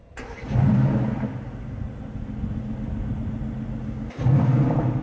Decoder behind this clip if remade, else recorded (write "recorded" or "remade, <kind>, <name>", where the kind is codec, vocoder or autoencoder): recorded